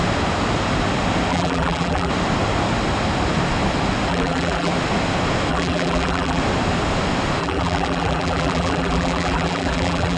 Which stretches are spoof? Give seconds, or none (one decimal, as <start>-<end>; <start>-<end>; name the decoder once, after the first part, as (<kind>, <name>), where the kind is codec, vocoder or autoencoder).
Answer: 1.3-2.1 (vocoder, BigVGAN v2); 4.1-4.7; 5.5-6.4; 7.4-10.2